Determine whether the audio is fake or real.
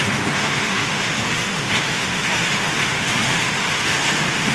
fake